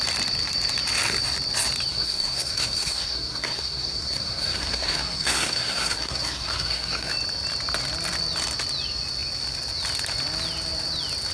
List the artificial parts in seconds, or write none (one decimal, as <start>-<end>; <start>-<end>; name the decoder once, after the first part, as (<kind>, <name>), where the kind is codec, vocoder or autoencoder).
1.9-7.1 (codec, SNAC)